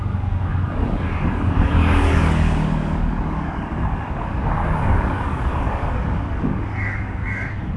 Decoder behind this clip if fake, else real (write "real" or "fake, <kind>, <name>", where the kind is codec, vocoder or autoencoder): fake, codec, DAC